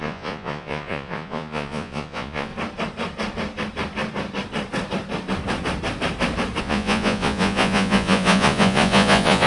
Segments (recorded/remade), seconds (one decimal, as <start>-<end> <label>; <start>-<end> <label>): 0.0-2.5 remade; 2.5-6.6 recorded; 6.6-9.5 remade